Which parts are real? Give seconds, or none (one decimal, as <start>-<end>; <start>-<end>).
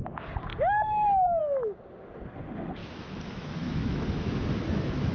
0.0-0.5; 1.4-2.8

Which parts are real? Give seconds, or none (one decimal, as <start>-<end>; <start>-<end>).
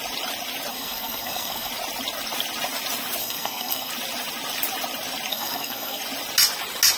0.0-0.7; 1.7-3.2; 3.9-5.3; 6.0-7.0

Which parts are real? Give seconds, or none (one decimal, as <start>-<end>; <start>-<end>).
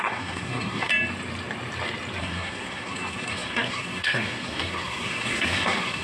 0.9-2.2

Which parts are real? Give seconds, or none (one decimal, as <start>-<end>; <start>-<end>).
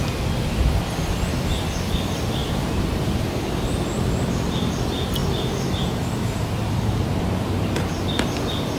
0.0-2.4; 3.5-5.2; 8.0-8.8